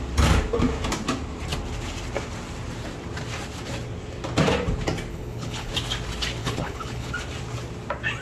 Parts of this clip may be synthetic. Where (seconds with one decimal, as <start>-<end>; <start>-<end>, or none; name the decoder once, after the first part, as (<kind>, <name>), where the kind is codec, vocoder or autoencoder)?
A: 5.1-5.7 (codec, HILCodec); 6.4-7.1